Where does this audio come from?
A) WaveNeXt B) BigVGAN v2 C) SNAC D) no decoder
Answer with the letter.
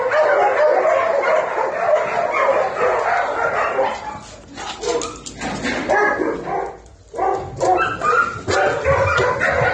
D